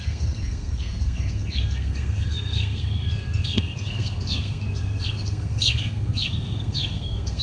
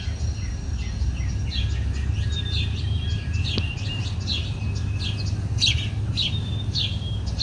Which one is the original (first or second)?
second